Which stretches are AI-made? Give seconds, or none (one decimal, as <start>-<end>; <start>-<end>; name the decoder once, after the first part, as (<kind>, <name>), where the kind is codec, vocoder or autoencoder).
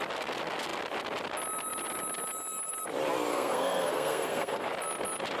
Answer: 3.3-4.7 (codec, SNAC)